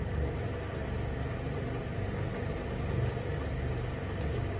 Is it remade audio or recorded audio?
recorded